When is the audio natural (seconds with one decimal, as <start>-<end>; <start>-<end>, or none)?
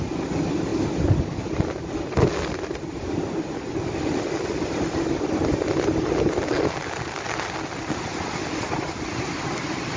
0.0-10.0